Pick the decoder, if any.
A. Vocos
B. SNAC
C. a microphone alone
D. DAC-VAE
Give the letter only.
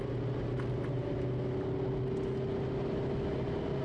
C